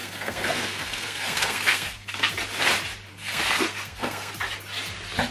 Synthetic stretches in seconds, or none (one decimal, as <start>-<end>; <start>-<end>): 0.0-2.3; 3.1-4.3